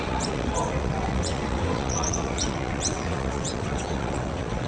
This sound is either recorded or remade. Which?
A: remade